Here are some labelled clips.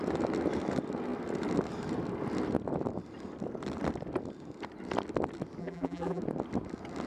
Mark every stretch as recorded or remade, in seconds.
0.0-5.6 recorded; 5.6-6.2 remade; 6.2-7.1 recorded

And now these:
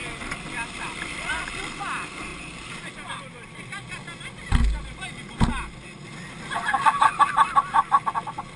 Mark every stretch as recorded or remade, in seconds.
0.0-8.6 recorded

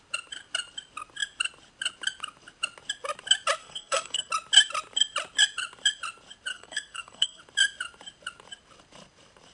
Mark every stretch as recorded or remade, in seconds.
0.0-3.6 recorded; 3.6-4.3 remade; 4.3-6.5 recorded; 6.5-7.4 remade; 7.4-9.5 recorded

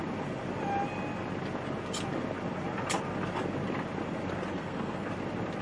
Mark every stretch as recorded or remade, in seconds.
0.0-4.5 recorded; 4.5-5.1 remade; 5.1-5.6 recorded

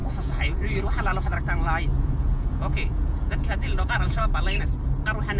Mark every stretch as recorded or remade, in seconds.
0.0-1.4 remade; 1.4-1.9 recorded; 1.9-4.2 remade; 4.2-5.4 recorded